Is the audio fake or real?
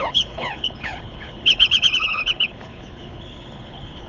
fake